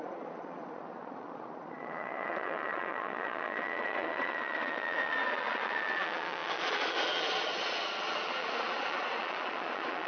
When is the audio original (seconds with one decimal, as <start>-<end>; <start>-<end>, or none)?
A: none